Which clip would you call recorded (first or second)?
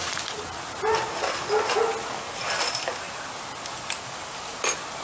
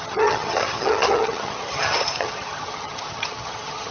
first